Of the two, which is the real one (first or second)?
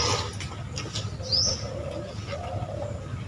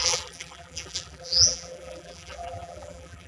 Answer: first